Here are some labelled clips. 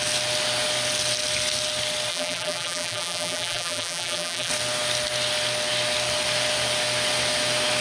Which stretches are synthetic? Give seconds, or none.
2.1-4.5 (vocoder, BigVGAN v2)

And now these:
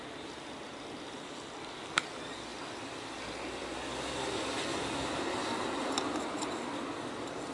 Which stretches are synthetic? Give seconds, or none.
none

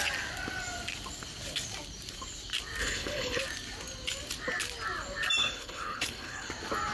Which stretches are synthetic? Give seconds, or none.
2.8-3.4 (codec, HILCodec); 5.4-6.5

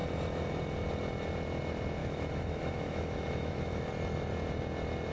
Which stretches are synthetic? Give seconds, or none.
2.0-3.9 (autoencoder, DAC-VAE)

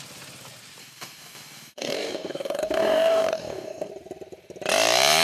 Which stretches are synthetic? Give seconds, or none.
0.8-3.9 (codec, DAC)

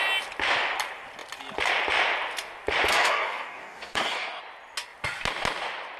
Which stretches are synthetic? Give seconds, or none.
2.9-4.4 (codec, DAC)

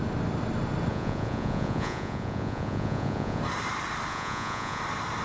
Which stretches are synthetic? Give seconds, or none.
0.9-3.4 (vocoder, Vocos); 4.1-4.8